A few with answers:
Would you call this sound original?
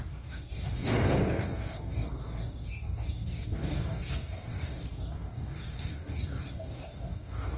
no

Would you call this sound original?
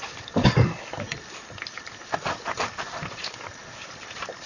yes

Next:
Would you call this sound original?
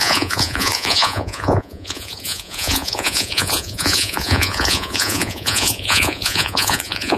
no